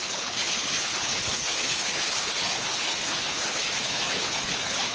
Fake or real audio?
fake